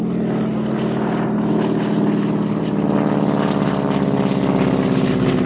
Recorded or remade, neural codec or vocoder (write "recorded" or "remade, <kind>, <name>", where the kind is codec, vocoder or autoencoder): recorded